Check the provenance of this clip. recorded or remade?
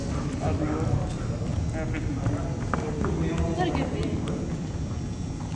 recorded